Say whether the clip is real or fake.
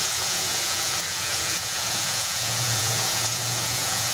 fake